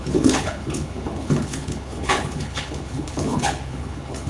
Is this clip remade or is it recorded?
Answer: remade